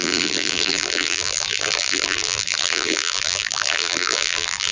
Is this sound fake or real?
fake